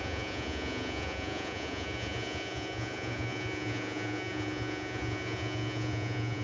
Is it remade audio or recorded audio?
remade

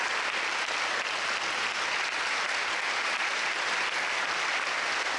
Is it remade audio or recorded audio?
recorded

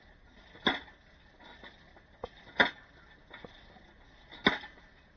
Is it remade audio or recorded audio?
recorded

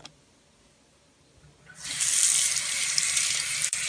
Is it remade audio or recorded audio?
recorded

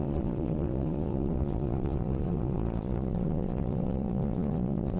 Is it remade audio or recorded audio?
remade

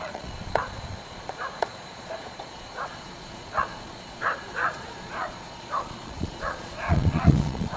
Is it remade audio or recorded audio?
remade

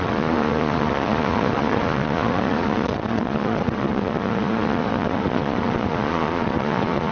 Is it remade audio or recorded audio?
remade